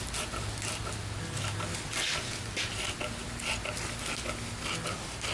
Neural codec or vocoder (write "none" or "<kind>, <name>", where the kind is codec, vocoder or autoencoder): none